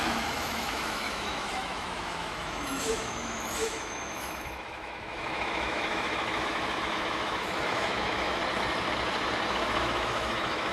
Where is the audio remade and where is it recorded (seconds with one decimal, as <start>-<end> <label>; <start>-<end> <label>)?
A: 0.0-8.4 remade; 8.4-9.5 recorded; 9.5-10.7 remade